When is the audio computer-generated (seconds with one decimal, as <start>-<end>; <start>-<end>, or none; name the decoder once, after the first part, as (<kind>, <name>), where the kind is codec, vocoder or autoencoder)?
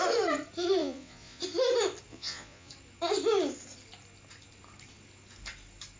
0.8-1.4 (vocoder, Vocos); 2.1-2.7